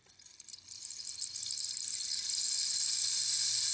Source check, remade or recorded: recorded